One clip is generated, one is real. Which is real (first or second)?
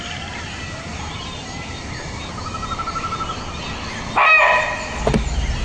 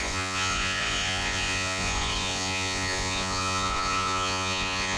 first